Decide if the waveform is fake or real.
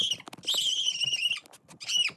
real